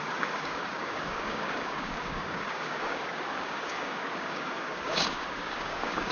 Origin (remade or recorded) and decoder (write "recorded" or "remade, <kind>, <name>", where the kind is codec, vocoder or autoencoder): remade, codec, DAC